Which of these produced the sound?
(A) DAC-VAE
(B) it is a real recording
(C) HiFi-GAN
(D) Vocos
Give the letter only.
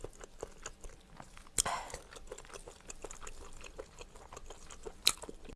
B